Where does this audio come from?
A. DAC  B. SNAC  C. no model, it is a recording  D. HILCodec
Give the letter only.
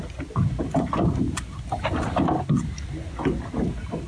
C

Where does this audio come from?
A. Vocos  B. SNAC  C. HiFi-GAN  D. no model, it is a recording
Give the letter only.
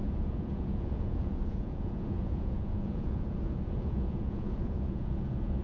A